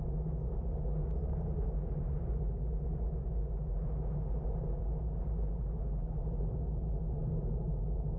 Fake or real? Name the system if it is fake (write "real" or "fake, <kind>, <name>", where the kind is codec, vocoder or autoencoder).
real